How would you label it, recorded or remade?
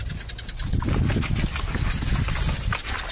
recorded